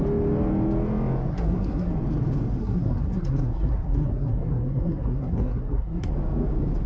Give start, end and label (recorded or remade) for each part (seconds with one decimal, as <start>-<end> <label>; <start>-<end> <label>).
0.0-1.3 recorded; 1.3-1.9 remade; 1.9-2.6 recorded; 2.6-6.1 remade; 6.1-6.9 recorded